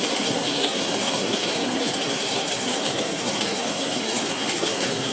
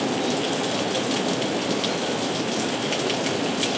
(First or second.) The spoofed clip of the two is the first